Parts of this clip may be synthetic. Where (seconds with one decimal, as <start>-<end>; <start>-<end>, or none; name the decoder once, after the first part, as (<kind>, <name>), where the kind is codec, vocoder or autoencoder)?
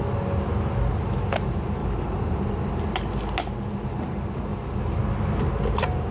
1.8-2.6 (vocoder, BigVGAN v2)